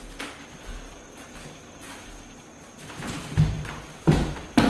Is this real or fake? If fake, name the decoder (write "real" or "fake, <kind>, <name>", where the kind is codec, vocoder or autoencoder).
real